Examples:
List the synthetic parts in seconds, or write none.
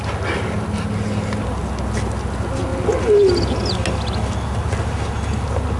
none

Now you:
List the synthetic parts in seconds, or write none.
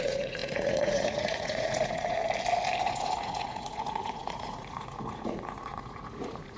0.0-2.2 (vocoder, Vocos); 2.8-6.6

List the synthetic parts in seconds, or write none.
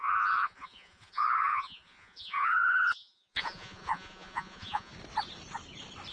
0.0-4.9 (vocoder, Vocos)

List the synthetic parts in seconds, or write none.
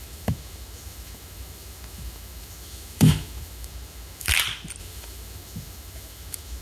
0.0-4.3 (autoencoder, DAC-VAE); 4.8-6.6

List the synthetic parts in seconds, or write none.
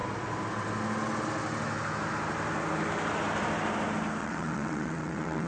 4.2-5.5 (vocoder, WaveNeXt)